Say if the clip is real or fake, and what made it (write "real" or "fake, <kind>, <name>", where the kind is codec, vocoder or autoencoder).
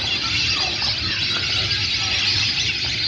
real